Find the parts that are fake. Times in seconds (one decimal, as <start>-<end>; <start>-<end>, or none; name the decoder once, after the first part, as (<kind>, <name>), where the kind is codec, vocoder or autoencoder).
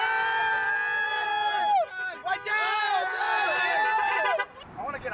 none